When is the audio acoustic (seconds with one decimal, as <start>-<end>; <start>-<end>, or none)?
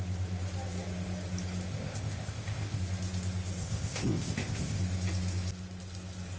0.0-1.7; 2.8-3.6; 4.8-6.4